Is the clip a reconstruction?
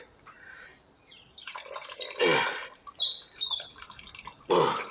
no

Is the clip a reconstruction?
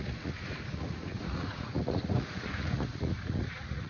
yes